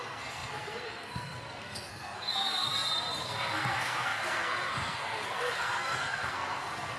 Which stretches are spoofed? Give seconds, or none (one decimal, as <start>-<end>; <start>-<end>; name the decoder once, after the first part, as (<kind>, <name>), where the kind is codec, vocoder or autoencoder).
0.0-2.7 (codec, SNAC); 3.2-7.0